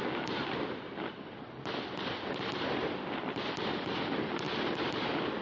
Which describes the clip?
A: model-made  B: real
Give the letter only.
B